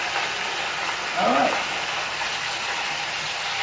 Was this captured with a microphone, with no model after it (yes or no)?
yes